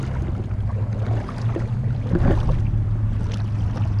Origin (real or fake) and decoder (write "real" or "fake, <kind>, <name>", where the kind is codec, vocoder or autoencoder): real